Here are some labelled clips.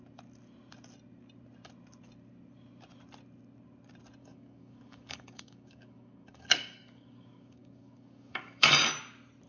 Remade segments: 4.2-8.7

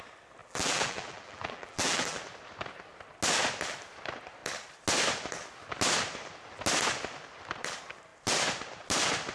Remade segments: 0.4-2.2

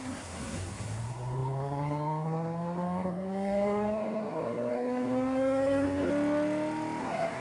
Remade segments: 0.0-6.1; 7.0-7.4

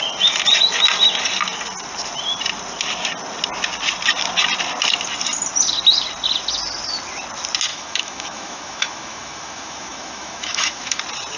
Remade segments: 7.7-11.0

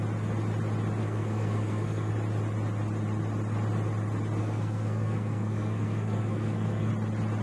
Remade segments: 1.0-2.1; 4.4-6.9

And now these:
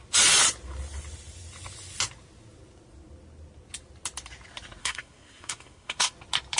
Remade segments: 4.8-6.1

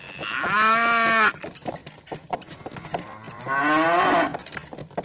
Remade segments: none

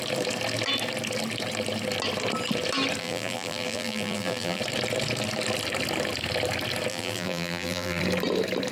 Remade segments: 3.0-4.6; 6.9-8.0